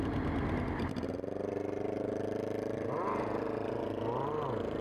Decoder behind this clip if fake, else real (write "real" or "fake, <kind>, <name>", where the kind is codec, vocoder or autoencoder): real